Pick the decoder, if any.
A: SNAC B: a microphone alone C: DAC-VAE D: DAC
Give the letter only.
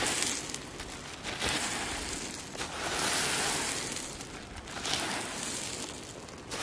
B